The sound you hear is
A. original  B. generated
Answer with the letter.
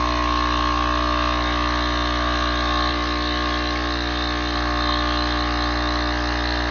A